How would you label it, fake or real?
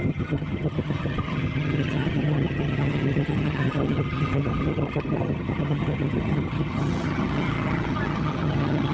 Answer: fake